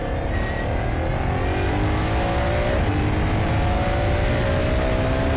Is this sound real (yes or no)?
yes